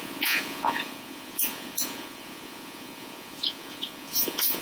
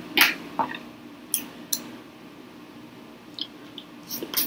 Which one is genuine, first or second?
second